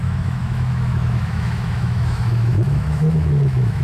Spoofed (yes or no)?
yes